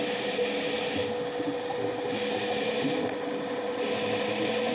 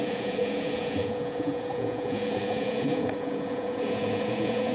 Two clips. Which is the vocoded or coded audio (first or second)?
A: second